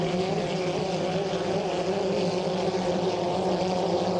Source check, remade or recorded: recorded